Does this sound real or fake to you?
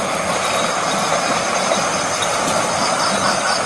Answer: real